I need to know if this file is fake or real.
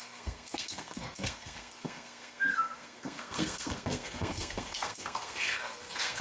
fake